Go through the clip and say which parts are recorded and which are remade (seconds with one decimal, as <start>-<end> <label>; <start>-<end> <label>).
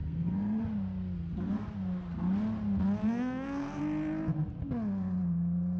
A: 0.0-0.6 remade; 0.6-3.0 recorded; 3.0-3.8 remade; 3.8-5.8 recorded